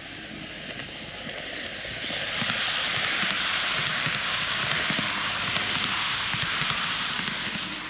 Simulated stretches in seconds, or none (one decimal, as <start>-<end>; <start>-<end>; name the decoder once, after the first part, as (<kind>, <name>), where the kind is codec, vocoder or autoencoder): 3.9-4.6 (codec, DAC)